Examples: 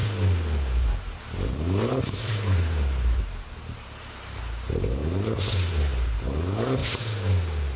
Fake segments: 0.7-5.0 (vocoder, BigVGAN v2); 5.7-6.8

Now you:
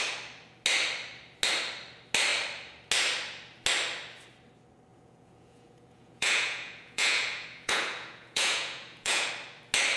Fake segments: 4.9-9.3 (vocoder, Vocos)